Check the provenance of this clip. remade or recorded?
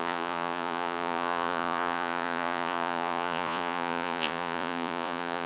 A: remade